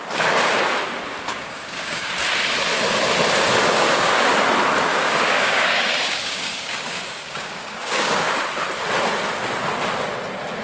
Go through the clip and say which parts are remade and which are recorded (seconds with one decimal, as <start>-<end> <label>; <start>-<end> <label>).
0.0-1.3 recorded; 1.3-2.1 remade; 2.1-3.6 recorded; 3.6-4.3 remade; 4.3-4.9 recorded; 4.9-8.4 remade; 8.4-10.6 recorded